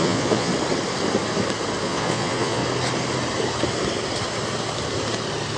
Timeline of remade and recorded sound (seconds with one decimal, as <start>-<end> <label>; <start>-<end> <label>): 0.0-0.5 remade; 0.5-1.8 recorded; 1.8-2.6 remade; 2.6-5.6 recorded